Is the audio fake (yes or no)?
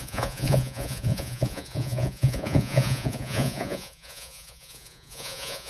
yes